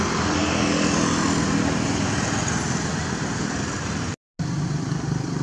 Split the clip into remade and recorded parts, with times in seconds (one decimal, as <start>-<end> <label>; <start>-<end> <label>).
0.0-5.4 recorded